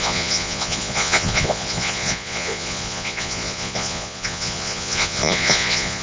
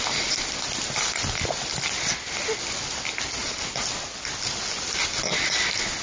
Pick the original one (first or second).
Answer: second